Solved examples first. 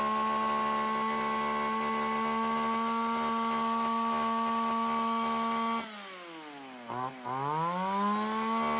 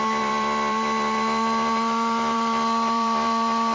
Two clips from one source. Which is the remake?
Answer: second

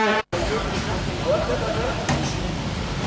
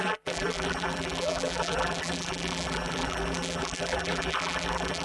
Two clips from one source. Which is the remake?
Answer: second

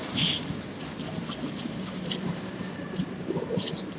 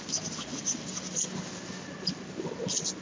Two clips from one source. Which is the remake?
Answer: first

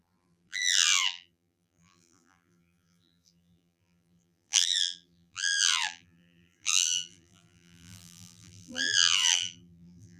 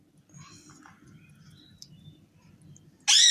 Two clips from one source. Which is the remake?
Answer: first